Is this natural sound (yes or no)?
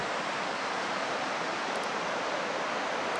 yes